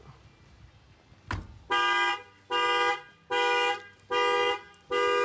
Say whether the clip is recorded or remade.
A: recorded